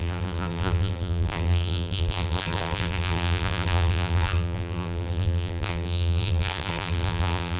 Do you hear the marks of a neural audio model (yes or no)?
yes